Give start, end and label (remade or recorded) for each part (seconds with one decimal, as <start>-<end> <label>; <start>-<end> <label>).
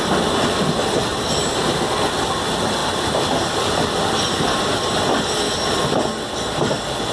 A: 0.0-1.1 recorded; 1.1-1.8 remade; 1.8-2.8 recorded; 2.8-3.6 remade; 3.6-7.1 recorded